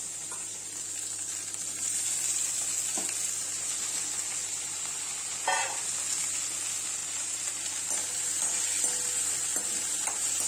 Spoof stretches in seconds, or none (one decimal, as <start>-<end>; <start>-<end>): none